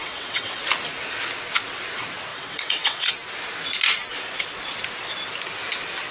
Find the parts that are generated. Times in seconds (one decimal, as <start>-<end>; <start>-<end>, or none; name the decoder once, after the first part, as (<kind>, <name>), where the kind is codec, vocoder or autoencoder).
0.0-0.6 (vocoder, WaveNeXt); 2.3-3.1